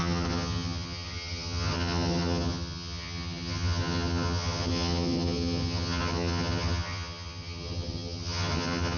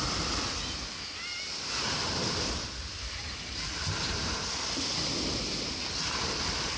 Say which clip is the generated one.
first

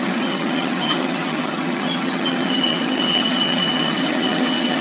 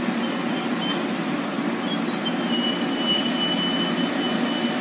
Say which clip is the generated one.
first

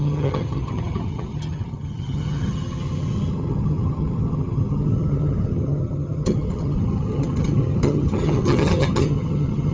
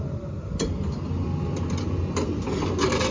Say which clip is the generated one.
first